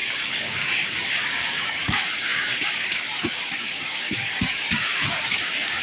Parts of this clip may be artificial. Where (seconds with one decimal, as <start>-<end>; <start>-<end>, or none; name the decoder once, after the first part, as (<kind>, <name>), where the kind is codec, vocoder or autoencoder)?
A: 0.0-5.8 (codec, DAC)